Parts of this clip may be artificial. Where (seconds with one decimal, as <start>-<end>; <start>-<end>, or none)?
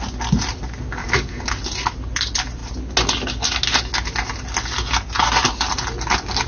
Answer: 1.0-1.5